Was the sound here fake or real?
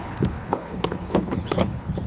fake